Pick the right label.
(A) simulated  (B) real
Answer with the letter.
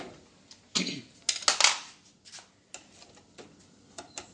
B